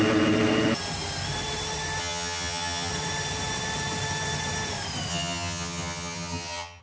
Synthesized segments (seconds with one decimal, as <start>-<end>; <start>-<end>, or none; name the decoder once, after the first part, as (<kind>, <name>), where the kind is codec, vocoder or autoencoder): 2.0-2.9 (vocoder, HiFi-GAN); 5.1-6.8